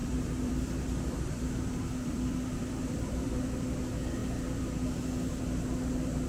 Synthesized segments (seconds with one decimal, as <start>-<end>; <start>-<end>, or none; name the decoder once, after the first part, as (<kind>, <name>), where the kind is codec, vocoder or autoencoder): 0.0-3.8 (vocoder, BigVGAN v2)